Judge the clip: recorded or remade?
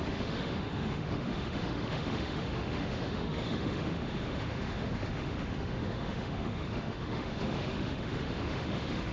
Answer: remade